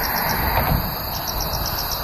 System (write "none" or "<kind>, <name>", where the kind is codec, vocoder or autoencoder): none